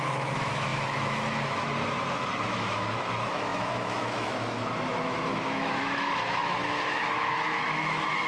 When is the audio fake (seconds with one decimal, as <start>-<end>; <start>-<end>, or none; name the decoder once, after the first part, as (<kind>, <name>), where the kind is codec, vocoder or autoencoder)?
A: 0.0-8.3 (autoencoder, DAC-VAE)